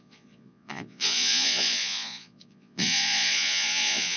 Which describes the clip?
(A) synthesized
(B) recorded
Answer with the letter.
A